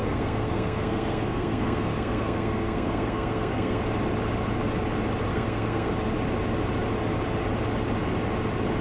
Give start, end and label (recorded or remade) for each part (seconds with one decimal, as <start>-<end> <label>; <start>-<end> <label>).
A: 0.0-3.8 remade; 3.8-5.3 recorded; 5.3-5.9 remade; 5.9-8.8 recorded